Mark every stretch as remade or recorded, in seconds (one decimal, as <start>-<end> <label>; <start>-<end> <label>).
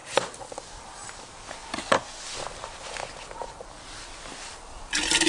0.0-5.3 recorded